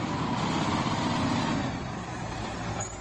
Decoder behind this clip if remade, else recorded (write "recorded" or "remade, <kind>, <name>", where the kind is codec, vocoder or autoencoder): recorded